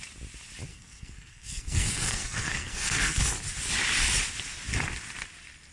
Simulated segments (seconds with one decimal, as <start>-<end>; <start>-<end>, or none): 0.7-3.2